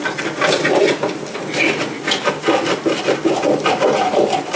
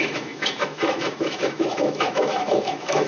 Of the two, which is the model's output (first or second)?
second